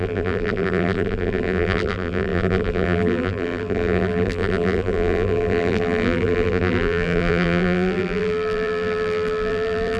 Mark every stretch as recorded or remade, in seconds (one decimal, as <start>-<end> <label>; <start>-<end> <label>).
0.0-10.0 remade